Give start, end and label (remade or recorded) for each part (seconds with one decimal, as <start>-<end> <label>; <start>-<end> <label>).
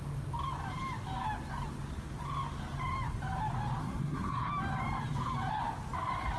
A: 0.0-3.8 recorded; 3.8-4.5 remade; 4.5-6.4 recorded